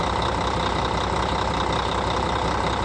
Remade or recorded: recorded